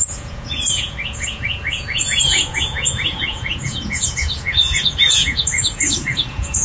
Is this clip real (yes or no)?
no